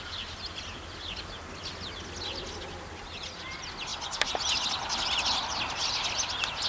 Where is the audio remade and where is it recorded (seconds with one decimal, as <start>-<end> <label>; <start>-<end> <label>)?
0.0-6.7 recorded